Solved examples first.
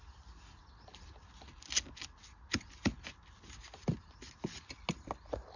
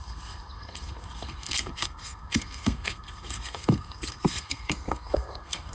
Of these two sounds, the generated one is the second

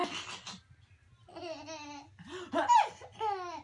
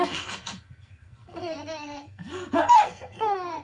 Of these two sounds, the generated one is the second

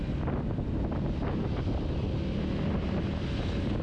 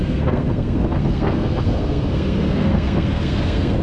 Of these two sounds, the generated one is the second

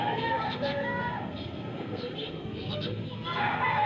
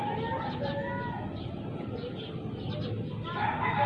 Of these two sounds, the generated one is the first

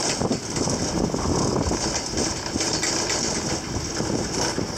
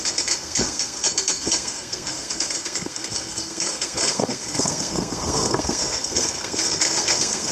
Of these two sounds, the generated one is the second